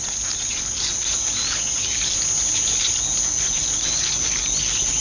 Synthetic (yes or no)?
no